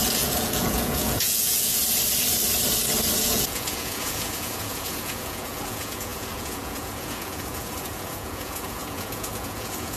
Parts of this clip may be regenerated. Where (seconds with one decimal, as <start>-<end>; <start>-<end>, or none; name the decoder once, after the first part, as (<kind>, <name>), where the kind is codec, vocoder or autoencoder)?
0.0-1.8 (vocoder, Vocos); 3.2-10.0